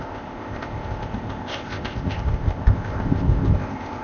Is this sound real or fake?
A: fake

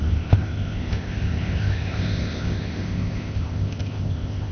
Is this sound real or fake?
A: fake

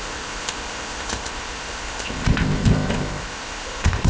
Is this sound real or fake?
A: fake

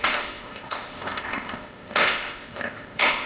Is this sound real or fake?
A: fake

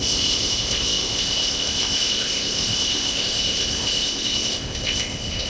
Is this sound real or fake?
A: fake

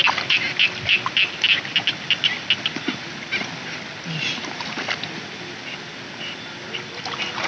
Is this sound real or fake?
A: real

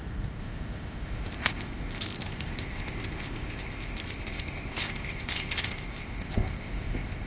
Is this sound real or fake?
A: fake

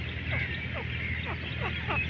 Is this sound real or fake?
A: real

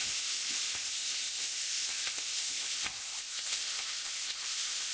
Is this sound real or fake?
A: fake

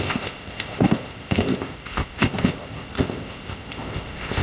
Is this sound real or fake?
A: fake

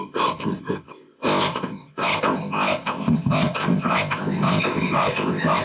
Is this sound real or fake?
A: fake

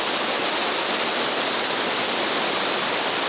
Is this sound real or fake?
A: real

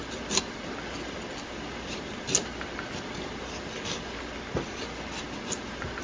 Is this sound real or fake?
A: real